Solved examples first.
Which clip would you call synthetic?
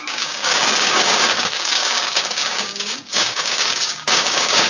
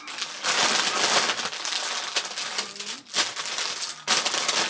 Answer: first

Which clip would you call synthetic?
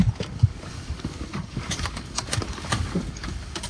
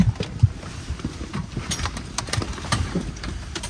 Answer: first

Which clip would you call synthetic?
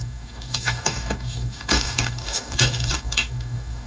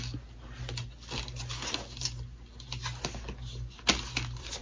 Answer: first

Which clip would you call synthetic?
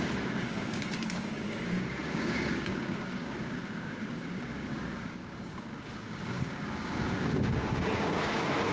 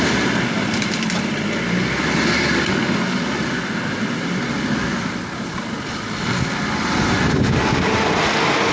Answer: first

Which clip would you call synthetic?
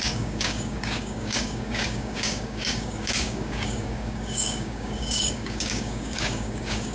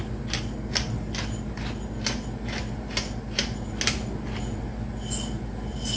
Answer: first